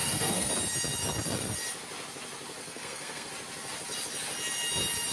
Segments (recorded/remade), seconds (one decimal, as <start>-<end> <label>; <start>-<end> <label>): 0.0-0.5 remade; 0.5-2.6 recorded; 2.6-3.3 remade; 3.3-5.1 recorded